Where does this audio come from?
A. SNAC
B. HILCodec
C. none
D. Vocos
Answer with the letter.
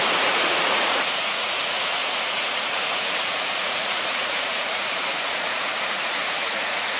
D